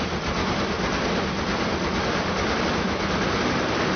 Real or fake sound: real